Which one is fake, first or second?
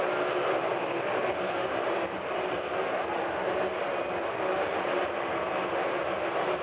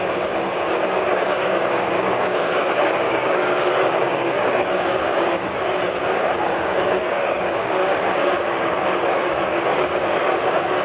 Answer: second